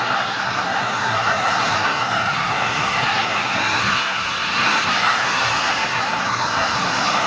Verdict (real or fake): fake